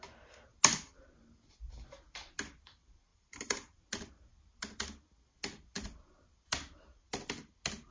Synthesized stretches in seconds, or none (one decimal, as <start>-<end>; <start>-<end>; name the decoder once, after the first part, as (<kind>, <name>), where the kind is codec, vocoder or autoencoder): 3.1-3.8 (vocoder, BigVGAN v2)